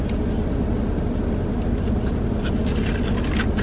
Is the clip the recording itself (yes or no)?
yes